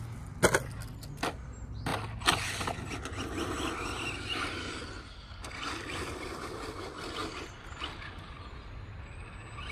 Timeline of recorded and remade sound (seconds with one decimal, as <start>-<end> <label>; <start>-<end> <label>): 0.0-9.7 recorded